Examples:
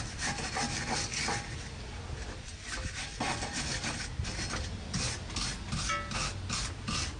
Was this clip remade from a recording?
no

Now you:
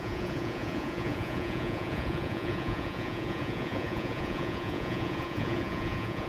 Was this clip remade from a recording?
yes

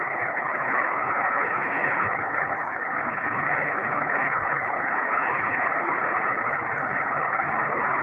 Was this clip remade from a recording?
yes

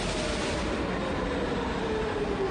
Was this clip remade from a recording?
no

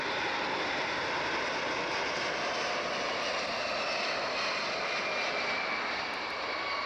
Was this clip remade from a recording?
no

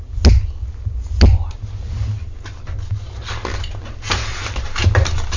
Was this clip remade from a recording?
no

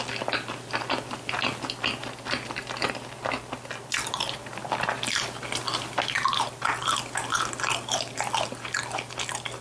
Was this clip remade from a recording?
no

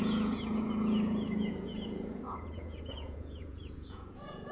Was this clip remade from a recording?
yes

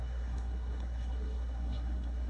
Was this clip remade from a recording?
yes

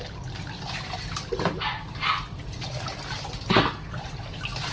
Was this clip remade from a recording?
no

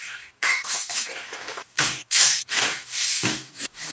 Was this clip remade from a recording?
yes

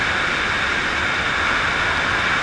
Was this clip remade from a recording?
no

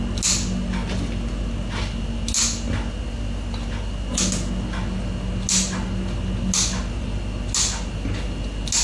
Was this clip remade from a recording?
no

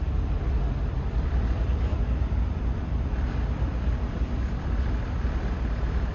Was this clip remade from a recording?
yes